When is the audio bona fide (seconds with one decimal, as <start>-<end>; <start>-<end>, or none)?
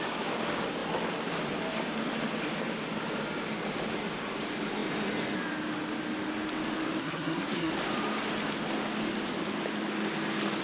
0.0-7.0; 7.7-10.6